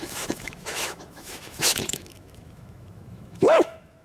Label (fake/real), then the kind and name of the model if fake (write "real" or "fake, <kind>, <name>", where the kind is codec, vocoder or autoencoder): fake, autoencoder, DAC-VAE